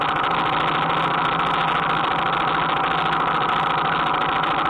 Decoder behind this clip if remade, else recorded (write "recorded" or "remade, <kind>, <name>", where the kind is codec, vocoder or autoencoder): recorded